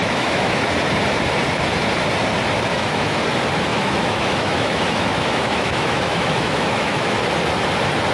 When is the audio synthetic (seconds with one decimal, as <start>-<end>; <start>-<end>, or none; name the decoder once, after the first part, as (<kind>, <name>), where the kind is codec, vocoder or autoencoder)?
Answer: 0.0-0.6 (autoencoder, DAC-VAE); 2.7-3.2; 3.7-7.2